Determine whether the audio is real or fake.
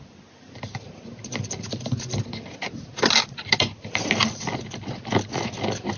real